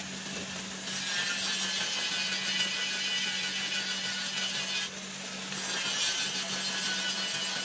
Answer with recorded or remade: recorded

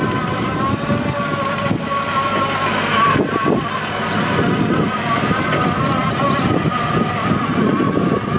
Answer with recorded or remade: recorded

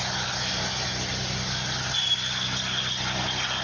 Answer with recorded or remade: recorded